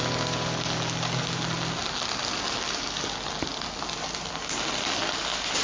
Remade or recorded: recorded